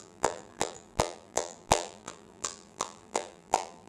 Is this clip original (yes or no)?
no